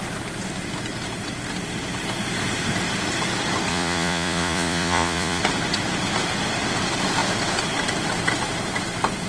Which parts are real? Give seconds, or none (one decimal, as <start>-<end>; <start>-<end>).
0.0-3.7; 5.4-9.3